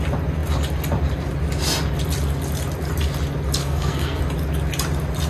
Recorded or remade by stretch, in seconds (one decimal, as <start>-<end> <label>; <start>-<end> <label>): 0.0-3.6 recorded; 3.6-4.2 remade; 4.2-5.3 recorded